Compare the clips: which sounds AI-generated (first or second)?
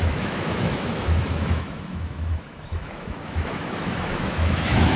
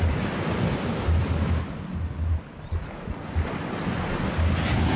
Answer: first